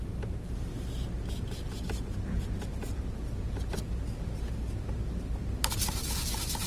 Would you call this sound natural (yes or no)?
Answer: no